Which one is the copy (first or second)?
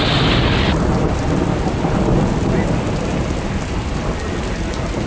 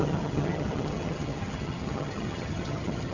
second